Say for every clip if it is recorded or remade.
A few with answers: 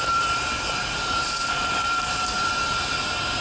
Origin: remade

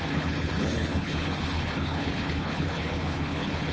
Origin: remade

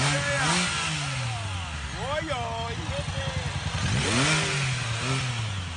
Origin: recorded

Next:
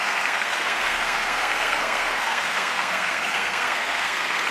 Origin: remade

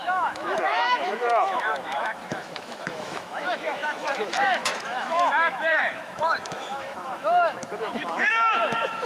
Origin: remade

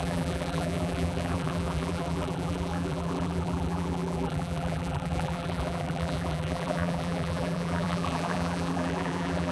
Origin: remade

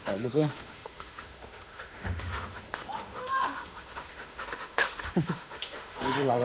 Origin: remade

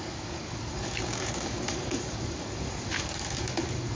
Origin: remade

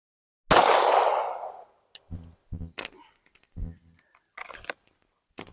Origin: recorded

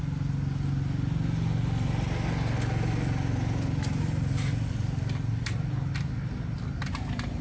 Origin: recorded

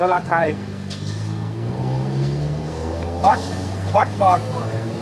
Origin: remade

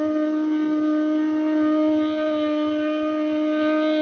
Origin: recorded